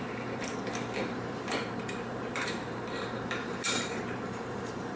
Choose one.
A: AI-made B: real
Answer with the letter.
A